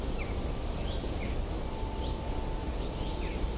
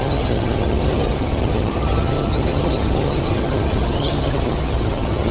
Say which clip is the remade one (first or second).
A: second